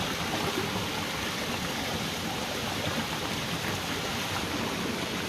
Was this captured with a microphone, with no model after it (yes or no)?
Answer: yes